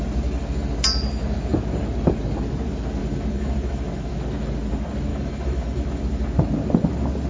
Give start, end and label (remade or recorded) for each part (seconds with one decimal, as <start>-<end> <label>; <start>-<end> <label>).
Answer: 0.0-3.0 recorded; 3.0-4.1 remade; 4.1-5.1 recorded; 5.1-6.0 remade; 6.0-7.3 recorded